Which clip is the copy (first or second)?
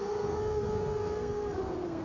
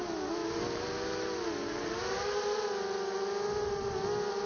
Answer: first